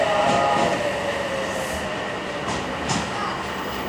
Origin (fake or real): real